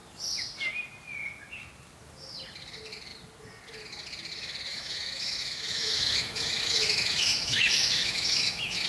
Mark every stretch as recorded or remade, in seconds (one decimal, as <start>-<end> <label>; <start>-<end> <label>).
0.0-4.7 recorded; 4.7-8.9 remade